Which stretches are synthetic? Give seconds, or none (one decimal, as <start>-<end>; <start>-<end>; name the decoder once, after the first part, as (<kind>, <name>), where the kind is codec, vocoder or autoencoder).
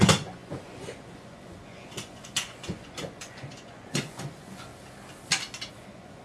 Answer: 0.0-4.7 (vocoder, Vocos); 5.7-6.2